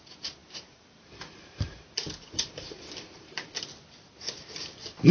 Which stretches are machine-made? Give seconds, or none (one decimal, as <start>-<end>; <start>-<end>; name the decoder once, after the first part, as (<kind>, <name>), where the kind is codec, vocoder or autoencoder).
0.4-3.5 (vocoder, BigVGAN v2)